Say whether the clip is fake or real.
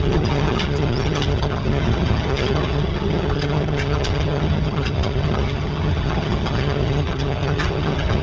fake